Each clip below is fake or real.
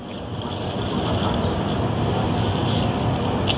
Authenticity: real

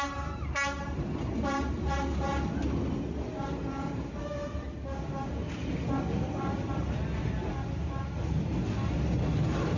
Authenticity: real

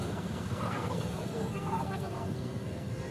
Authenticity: fake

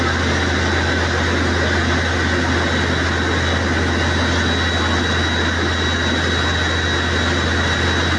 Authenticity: real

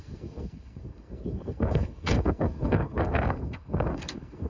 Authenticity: fake